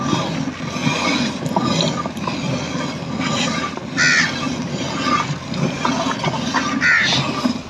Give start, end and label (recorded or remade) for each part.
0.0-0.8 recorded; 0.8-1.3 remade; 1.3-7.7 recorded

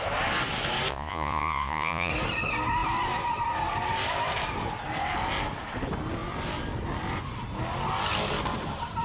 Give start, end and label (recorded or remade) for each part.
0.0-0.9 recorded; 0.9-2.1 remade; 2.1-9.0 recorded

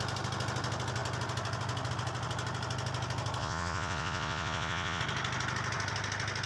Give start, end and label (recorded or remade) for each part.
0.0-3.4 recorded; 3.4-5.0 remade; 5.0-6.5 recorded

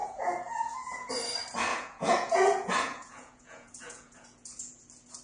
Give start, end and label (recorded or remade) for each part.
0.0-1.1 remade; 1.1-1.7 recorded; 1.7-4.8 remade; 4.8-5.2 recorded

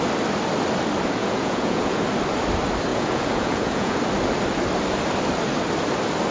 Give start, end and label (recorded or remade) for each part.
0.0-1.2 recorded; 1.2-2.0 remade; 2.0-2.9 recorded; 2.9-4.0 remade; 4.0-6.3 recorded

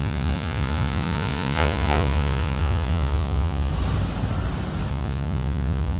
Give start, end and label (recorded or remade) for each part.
0.0-3.7 remade; 3.7-4.9 recorded; 4.9-6.0 remade

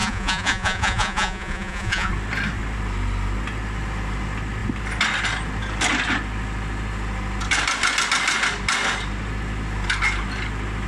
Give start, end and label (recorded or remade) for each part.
0.0-2.1 remade; 2.1-10.9 recorded

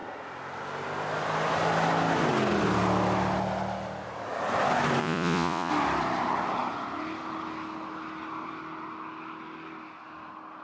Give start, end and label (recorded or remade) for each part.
0.0-5.0 recorded; 5.0-5.7 remade; 5.7-10.6 recorded